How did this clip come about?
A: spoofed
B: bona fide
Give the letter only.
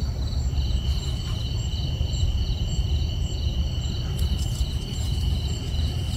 A